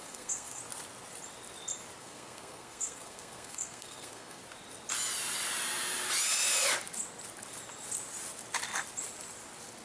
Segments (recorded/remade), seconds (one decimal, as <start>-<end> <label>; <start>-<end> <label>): 0.0-0.6 remade; 0.6-2.0 recorded; 2.0-4.4 remade; 4.4-9.8 recorded